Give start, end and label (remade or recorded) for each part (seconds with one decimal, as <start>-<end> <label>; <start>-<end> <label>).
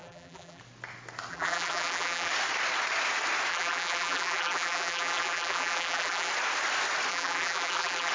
0.0-0.6 remade; 0.6-1.3 recorded; 1.3-2.3 remade; 2.3-3.5 recorded; 3.5-6.3 remade; 6.3-7.1 recorded; 7.1-8.1 remade